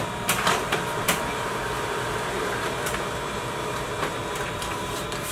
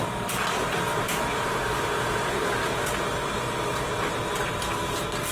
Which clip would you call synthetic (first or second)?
first